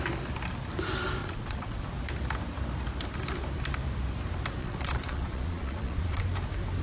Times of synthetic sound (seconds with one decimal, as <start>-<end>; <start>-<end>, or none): 1.2-1.8; 4.6-6.2